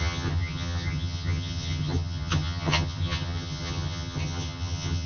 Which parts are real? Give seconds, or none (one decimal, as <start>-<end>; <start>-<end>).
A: none